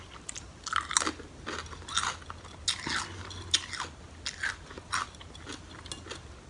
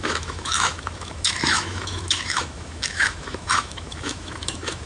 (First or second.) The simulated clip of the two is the second